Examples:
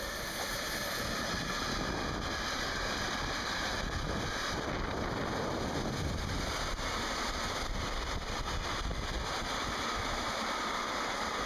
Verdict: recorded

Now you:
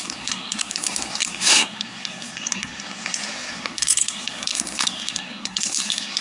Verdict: remade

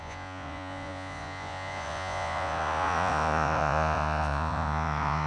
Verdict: remade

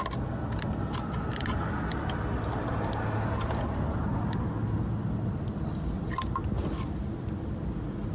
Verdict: recorded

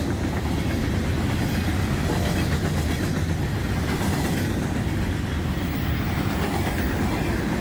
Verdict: recorded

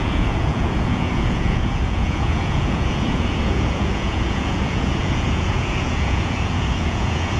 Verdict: remade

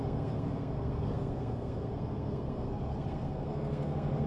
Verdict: remade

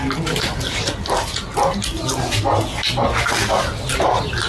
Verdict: recorded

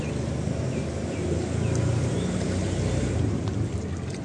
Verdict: recorded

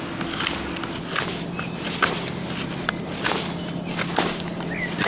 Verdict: recorded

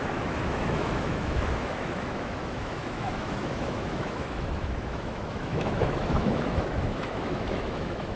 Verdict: remade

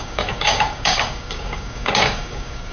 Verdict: remade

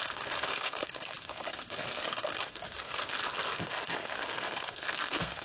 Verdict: remade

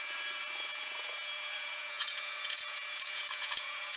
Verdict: remade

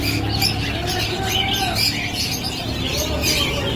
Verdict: recorded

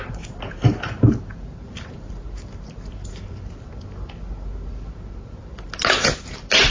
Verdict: recorded